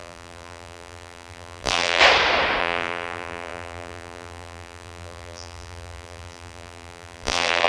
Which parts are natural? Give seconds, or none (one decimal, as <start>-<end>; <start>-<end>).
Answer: 2.0-2.6